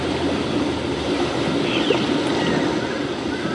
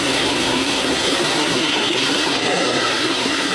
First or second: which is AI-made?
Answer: second